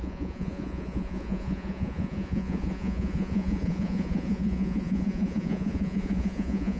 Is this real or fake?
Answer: fake